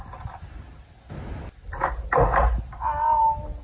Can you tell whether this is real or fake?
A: real